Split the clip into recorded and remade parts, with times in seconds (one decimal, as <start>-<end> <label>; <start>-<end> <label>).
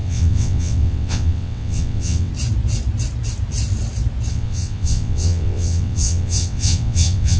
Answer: 0.0-2.3 remade; 2.3-4.3 recorded; 4.3-7.4 remade